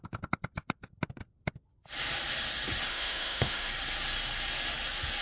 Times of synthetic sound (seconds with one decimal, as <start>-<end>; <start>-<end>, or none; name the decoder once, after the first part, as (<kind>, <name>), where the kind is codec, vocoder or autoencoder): 2.9-3.7 (autoencoder, DAC-VAE)